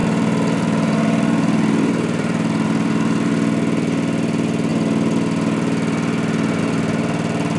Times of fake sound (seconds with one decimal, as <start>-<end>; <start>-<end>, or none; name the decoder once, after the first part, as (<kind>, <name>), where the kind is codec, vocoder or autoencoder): 0.0-3.3 (vocoder, BigVGAN v2)